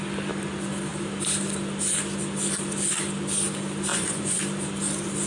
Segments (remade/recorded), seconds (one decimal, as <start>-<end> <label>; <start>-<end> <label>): 0.0-3.9 recorded; 3.9-4.4 remade; 4.4-5.3 recorded

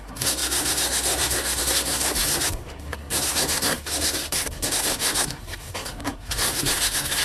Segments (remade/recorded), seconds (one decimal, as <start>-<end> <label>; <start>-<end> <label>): 0.0-7.2 remade

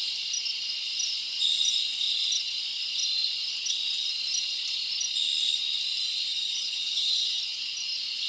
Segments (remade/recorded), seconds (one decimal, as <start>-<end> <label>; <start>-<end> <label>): 0.0-6.3 recorded; 6.3-7.4 remade; 7.4-8.3 recorded

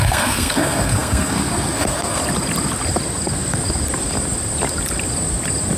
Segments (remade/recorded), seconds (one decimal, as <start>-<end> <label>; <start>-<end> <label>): 0.0-2.2 remade; 2.2-5.8 recorded

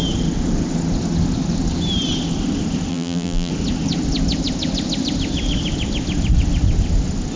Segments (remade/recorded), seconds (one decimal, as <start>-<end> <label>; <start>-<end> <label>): 0.0-2.9 recorded; 2.9-3.5 remade; 3.5-7.4 recorded

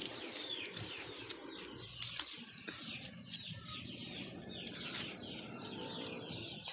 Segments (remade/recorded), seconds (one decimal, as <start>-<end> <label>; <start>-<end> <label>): 0.0-2.7 remade; 2.7-6.7 recorded

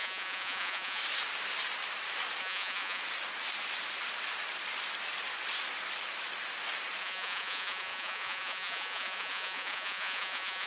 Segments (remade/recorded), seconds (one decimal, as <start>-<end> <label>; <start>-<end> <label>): 0.0-1.0 remade; 1.0-2.4 recorded; 2.4-3.0 remade; 3.0-7.0 recorded; 7.0-10.7 remade

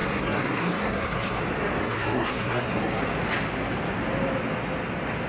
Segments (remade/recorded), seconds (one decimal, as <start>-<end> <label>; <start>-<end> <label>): 0.0-1.4 remade; 1.4-1.8 recorded; 1.8-3.0 remade; 3.0-5.3 recorded